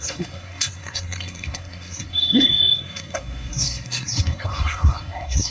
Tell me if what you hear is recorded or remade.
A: remade